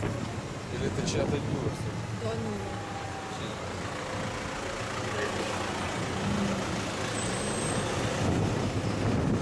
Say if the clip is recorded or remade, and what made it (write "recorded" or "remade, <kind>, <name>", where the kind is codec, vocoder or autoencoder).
recorded